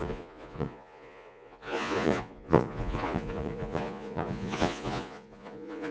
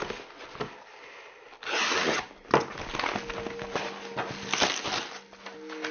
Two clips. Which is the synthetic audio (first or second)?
first